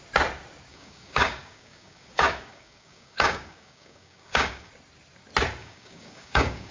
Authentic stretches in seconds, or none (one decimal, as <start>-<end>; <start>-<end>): 0.0-0.7; 4.7-5.6

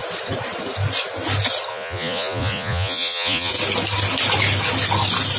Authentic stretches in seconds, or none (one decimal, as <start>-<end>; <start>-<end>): 0.0-1.7; 3.5-5.4

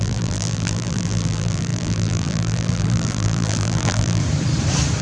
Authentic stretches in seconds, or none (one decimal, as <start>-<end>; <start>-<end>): 4.2-5.0

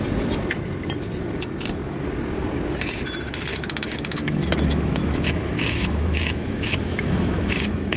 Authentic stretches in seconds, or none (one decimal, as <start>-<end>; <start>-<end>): 0.0-3.5

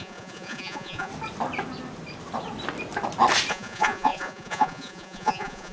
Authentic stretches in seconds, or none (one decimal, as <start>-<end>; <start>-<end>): 1.1-3.5

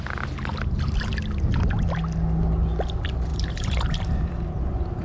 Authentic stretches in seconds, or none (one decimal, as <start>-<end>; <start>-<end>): 0.0-0.5; 1.1-3.3; 4.3-5.0